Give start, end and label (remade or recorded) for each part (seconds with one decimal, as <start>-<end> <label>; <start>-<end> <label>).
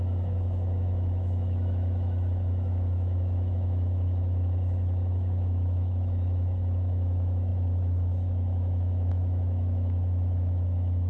0.0-11.1 remade